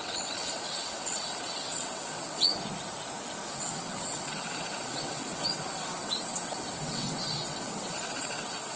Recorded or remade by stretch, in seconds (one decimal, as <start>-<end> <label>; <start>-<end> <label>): 0.0-2.5 remade; 2.5-3.5 recorded; 3.5-8.8 remade